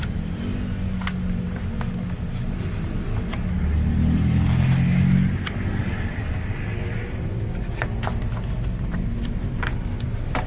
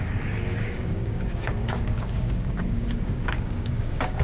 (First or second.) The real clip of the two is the first